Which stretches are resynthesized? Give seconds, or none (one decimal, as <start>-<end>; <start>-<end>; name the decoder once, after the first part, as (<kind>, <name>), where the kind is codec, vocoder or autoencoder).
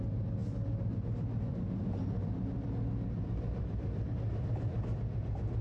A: 0.0-5.6 (vocoder, BigVGAN v2)